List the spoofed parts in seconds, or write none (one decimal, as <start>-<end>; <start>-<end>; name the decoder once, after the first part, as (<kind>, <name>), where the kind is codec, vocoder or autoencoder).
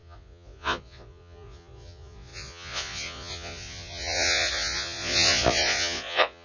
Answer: 0.0-6.4 (vocoder, Vocos)